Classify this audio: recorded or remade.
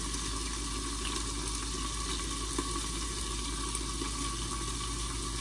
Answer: recorded